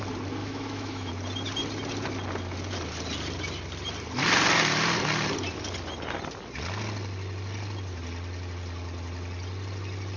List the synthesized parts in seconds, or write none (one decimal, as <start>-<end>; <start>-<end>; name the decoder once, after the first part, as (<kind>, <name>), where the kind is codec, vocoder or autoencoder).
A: 0.4-1.1 (autoencoder, DAC-VAE)